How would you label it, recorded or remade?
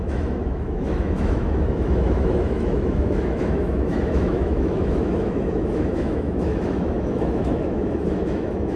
remade